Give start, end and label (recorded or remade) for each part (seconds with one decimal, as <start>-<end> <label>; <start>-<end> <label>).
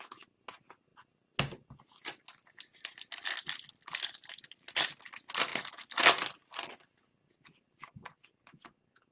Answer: 0.0-9.1 recorded